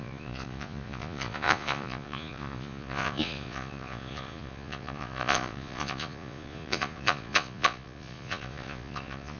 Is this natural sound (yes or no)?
no